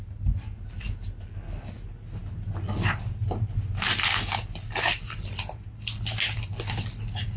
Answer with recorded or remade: recorded